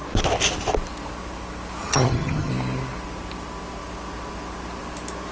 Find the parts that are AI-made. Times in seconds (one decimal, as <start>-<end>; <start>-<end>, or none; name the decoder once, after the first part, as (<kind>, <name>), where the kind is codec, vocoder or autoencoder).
1.8-2.5 (vocoder, HiFi-GAN)